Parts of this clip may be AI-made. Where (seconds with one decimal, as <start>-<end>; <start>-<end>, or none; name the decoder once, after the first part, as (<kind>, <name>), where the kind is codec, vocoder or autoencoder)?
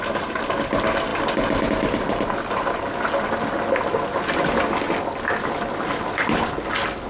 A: none